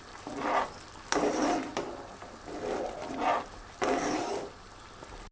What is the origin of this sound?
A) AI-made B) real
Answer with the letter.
B